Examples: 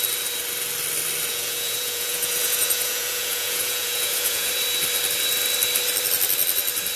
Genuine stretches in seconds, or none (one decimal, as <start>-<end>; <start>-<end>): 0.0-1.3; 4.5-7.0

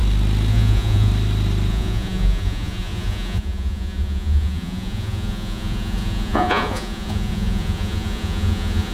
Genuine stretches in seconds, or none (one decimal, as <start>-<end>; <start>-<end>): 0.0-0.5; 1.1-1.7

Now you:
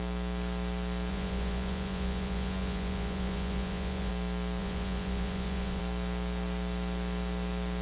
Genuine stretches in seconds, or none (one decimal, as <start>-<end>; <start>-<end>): 0.0-1.1; 4.1-4.6; 5.8-7.8